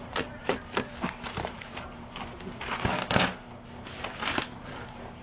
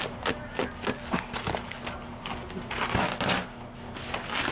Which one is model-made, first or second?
first